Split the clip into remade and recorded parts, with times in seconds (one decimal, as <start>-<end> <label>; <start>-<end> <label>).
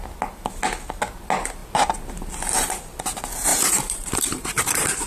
0.0-3.5 recorded; 3.5-5.1 remade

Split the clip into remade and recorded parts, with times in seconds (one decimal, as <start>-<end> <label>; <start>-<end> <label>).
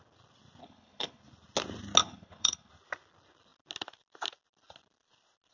0.0-0.6 recorded; 0.6-1.2 remade; 1.2-2.0 recorded; 2.0-2.7 remade; 2.7-5.5 recorded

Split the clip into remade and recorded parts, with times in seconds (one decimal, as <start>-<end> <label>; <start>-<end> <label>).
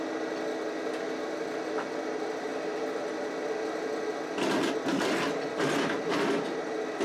0.0-7.0 recorded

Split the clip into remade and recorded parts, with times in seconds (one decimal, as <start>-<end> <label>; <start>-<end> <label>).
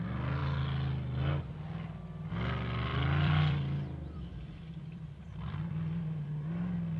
0.0-2.9 recorded; 2.9-5.7 remade; 5.7-7.0 recorded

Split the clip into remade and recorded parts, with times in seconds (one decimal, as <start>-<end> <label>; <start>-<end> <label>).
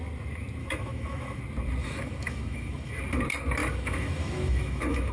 0.0-0.6 recorded; 0.6-1.4 remade; 1.4-1.8 recorded; 1.8-3.0 remade; 3.0-3.6 recorded; 3.6-5.1 remade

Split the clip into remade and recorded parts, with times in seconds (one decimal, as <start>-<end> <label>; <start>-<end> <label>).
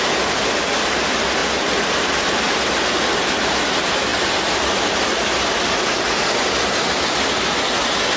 0.0-8.2 recorded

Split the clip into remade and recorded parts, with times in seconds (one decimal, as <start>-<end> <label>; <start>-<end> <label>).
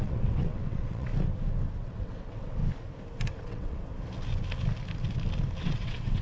0.0-1.1 remade; 1.1-1.8 recorded; 1.8-2.6 remade; 2.6-3.4 recorded; 3.4-3.9 remade; 3.9-5.6 recorded; 5.6-6.2 remade